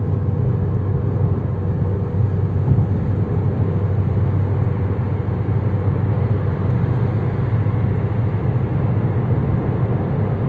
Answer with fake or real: real